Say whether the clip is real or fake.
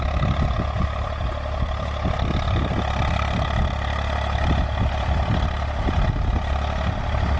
real